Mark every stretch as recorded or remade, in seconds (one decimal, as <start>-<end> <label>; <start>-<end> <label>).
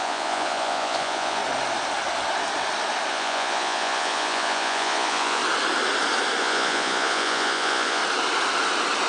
0.0-1.4 remade; 1.4-3.1 recorded; 3.1-5.4 remade; 5.4-6.4 recorded; 6.4-8.0 remade; 8.0-9.1 recorded